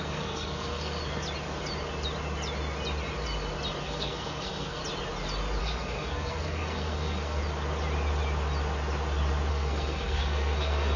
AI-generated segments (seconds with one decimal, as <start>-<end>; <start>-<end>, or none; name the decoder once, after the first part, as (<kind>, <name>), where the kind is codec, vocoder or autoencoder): 0.0-1.0 (codec, SNAC); 3.8-4.8; 5.6-7.4; 9.5-11.0